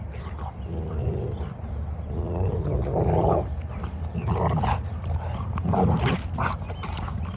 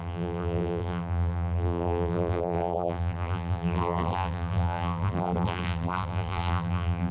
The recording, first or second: first